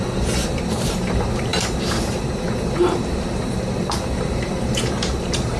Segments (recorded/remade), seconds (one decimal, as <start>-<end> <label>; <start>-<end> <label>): 0.0-5.6 remade